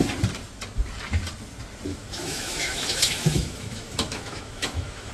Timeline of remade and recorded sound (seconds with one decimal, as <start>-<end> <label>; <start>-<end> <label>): 0.0-1.9 recorded; 1.9-5.1 remade